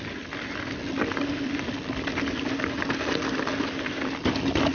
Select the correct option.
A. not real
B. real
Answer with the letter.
B